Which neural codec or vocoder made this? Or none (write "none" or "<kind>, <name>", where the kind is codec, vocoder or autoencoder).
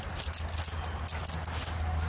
none